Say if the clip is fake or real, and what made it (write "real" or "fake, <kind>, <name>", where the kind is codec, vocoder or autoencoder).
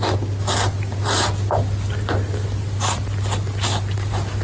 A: real